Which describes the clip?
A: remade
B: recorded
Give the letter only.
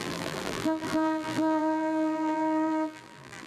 A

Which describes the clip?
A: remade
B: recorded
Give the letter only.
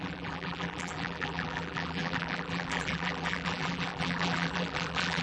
A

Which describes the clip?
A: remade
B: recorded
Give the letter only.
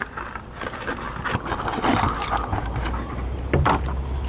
B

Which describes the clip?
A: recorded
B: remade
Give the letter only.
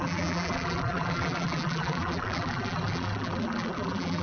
B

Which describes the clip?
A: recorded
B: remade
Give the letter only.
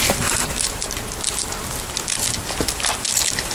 A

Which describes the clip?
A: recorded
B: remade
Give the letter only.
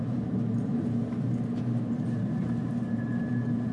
B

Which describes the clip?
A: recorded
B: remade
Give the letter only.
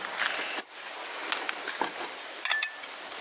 A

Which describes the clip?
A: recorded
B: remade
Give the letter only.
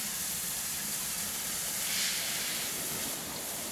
B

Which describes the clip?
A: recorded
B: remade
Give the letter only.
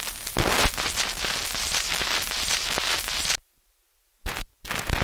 A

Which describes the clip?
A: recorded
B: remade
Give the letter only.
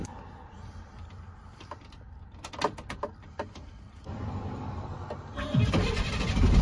B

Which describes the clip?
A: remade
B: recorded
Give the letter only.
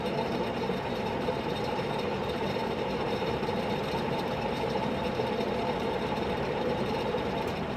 A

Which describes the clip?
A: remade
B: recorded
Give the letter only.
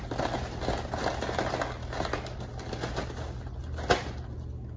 B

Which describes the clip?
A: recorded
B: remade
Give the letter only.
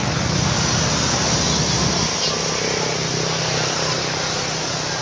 A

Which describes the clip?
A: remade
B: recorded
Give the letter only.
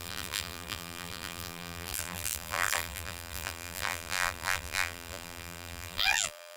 A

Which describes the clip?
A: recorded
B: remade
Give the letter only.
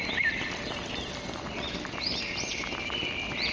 A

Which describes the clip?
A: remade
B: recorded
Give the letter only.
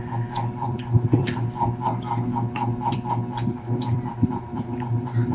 A